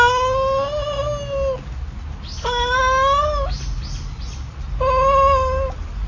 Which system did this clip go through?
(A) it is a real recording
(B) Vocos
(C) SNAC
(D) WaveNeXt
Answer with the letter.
A